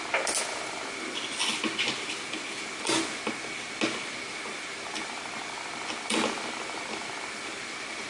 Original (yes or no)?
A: yes